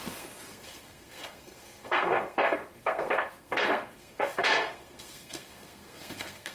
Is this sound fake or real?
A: fake